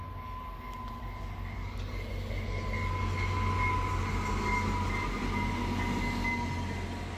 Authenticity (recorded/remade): recorded